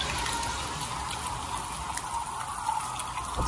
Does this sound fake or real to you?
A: real